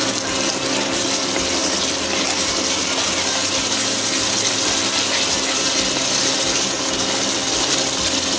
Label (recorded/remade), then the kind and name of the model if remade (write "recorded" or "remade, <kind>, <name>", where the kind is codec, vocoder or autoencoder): recorded